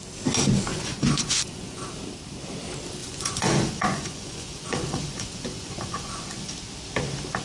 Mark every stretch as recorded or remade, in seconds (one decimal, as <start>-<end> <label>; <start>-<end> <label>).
0.0-0.7 recorded; 0.7-1.9 remade; 1.9-3.0 recorded; 3.0-6.5 remade; 6.5-7.4 recorded